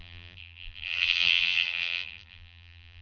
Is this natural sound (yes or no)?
no